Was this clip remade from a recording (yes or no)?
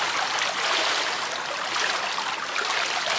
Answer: no